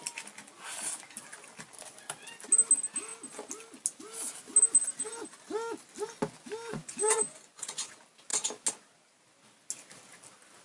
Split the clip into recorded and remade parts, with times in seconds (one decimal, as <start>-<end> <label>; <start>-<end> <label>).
0.0-6.7 recorded; 6.7-7.9 remade; 7.9-10.6 recorded